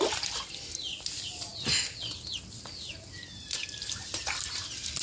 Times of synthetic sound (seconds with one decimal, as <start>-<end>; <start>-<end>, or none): none